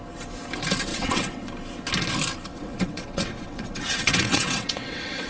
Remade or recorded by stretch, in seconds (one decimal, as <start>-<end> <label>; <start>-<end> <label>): 0.0-0.9 recorded; 0.9-1.5 remade; 1.5-2.5 recorded; 2.5-5.3 remade